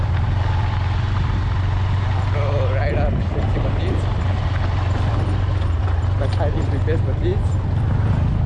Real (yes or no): yes